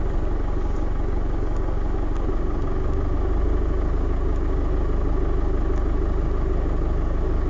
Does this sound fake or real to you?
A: real